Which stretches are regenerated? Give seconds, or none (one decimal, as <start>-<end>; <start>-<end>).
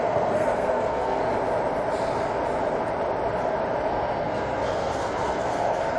0.0-1.2; 3.9-6.0